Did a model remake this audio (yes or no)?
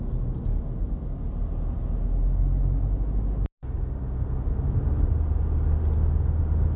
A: no